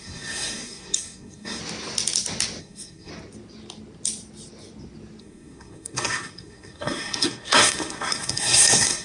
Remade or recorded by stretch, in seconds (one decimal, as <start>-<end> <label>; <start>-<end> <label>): 0.0-1.6 remade; 1.6-2.6 recorded; 2.6-3.1 remade; 3.1-5.2 recorded; 5.2-9.0 remade